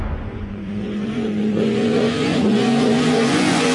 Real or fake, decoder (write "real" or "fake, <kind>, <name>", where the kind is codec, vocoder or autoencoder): fake, vocoder, Vocos